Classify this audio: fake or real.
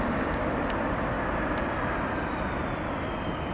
real